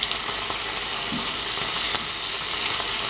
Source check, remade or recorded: recorded